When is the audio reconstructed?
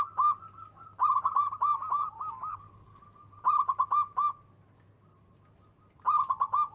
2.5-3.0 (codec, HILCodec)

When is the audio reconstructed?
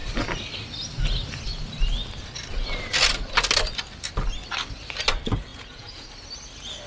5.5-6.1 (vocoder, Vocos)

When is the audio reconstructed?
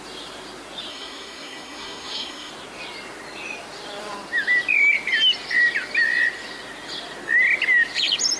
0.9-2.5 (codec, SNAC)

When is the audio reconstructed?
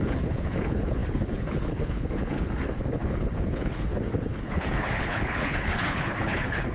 0.0-6.7 (codec, HILCodec)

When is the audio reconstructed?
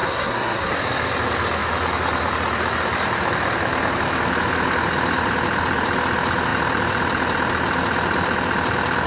0.0-0.7 (codec, SNAC)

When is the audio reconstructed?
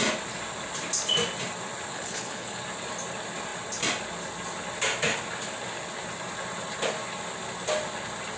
1.9-2.6 (codec, HILCodec)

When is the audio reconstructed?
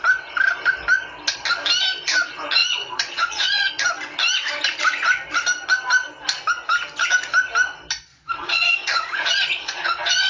2.6-3.7 (vocoder, Vocos); 8.1-10.3